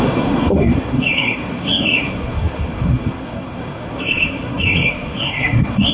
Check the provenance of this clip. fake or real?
fake